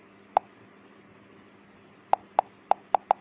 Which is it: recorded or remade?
recorded